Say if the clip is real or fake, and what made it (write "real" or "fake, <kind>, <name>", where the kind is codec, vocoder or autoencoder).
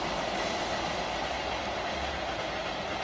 real